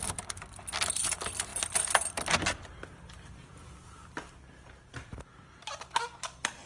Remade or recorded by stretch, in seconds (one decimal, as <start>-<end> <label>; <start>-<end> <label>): 0.0-6.7 recorded